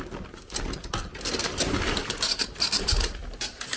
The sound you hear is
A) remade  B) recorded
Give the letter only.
B